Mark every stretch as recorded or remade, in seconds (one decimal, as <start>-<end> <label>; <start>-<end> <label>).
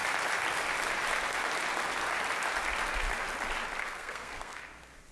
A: 0.0-3.8 recorded; 3.8-4.6 remade; 4.6-5.1 recorded